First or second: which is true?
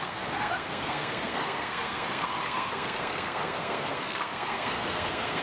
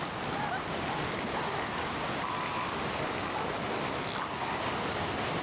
second